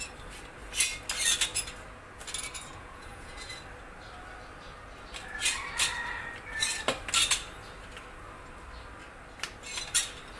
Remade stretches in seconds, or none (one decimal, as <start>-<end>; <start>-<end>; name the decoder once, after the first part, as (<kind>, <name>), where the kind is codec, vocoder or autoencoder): 2.8-3.6 (vocoder, Vocos)